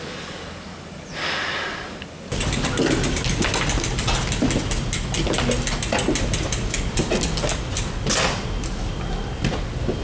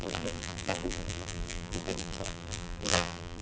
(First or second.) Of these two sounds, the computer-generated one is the second